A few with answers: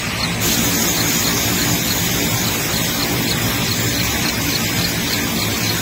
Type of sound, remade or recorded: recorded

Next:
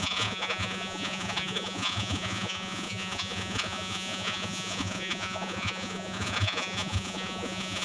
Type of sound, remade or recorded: remade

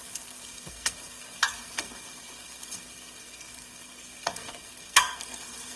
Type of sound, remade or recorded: remade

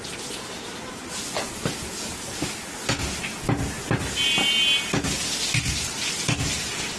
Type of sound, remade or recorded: recorded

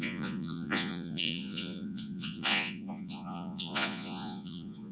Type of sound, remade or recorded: remade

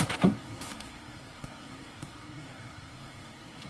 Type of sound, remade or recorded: remade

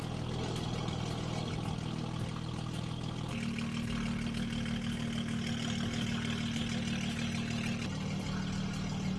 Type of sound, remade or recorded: recorded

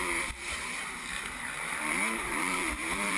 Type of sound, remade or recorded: remade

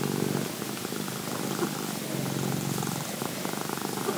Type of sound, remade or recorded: recorded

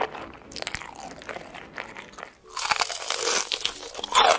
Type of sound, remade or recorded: recorded